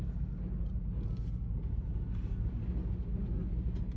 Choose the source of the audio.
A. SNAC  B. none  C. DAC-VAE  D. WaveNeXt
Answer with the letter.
B